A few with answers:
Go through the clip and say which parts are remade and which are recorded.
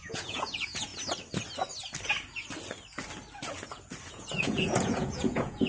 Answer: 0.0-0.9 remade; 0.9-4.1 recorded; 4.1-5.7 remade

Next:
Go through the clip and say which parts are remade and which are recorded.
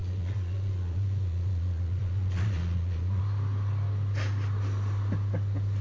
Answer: 0.0-3.2 remade; 3.2-5.8 recorded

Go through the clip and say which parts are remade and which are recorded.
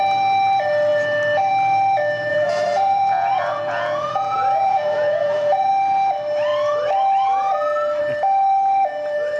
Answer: 0.0-2.3 recorded; 2.3-5.7 remade; 5.7-9.4 recorded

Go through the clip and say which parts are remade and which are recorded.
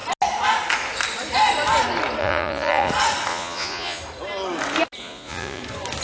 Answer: 0.0-2.2 recorded; 2.2-2.9 remade; 2.9-3.3 recorded; 3.3-4.0 remade; 4.0-5.0 recorded; 5.0-5.6 remade; 5.6-6.0 recorded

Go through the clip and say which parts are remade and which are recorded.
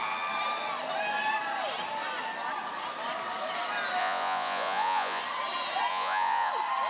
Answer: 0.0-4.0 recorded; 4.0-5.2 remade; 5.2-5.9 recorded; 5.9-6.5 remade; 6.5-6.9 recorded